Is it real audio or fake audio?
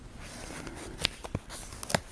real